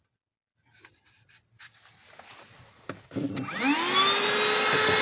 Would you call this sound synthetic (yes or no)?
no